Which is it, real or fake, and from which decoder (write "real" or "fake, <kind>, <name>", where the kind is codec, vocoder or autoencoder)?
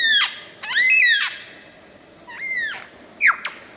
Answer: real